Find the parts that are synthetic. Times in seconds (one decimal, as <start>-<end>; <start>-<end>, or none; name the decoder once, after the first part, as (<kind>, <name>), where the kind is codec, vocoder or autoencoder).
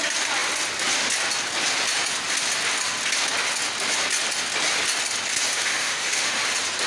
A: 5.5-6.4 (autoencoder, DAC-VAE)